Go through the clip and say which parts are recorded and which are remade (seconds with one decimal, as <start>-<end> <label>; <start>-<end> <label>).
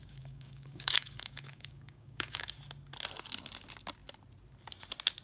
0.0-2.6 remade; 2.6-5.2 recorded